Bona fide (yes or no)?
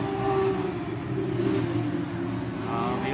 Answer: yes